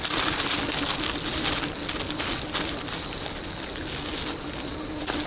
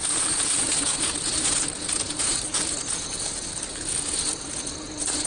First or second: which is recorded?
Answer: first